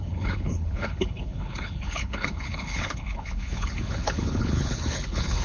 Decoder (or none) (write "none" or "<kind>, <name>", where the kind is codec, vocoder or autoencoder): codec, HILCodec